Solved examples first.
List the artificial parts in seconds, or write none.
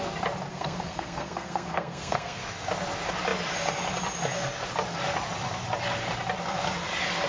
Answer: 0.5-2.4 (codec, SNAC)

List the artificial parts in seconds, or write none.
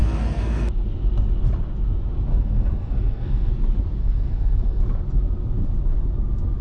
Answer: 0.0-0.7 (codec, SNAC); 2.3-3.5; 4.0-4.8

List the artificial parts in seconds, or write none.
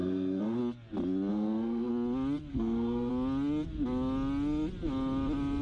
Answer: 0.0-0.6 (codec, SNAC); 1.3-1.9; 2.5-3.1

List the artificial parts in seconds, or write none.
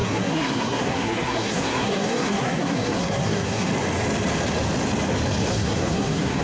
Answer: 0.0-3.7 (codec, SNAC); 5.5-6.4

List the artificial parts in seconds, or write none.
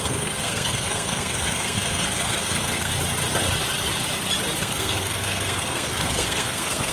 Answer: 0.0-2.9 (codec, SNAC); 4.6-6.9